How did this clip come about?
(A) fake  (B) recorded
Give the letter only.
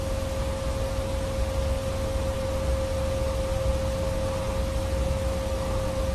B